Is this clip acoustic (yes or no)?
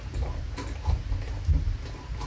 yes